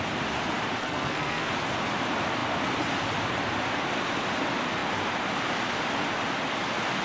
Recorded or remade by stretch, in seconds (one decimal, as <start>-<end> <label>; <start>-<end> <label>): 0.0-0.8 recorded; 0.8-1.5 remade; 1.5-7.0 recorded